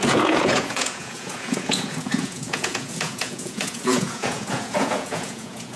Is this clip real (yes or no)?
no